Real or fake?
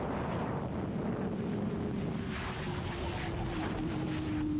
real